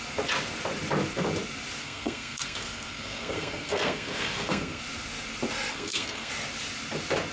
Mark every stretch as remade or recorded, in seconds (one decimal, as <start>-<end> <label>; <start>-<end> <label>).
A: 0.0-1.8 recorded; 1.8-4.8 remade; 4.8-5.7 recorded; 5.7-6.3 remade; 6.3-7.3 recorded